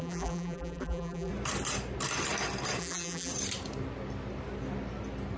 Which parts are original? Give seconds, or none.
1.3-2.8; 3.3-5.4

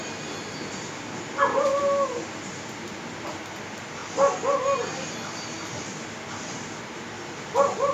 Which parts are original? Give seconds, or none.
0.0-7.9

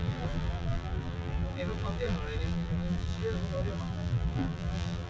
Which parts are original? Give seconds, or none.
none

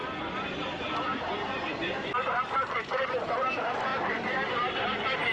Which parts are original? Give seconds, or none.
0.0-1.8; 3.1-5.3

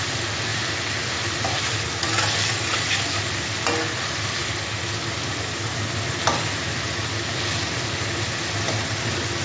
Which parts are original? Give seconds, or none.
0.0-9.4

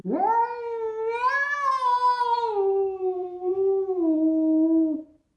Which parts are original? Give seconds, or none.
0.0-3.0; 3.5-5.4